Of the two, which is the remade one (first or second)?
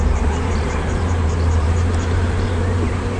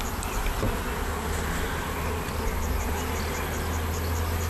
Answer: first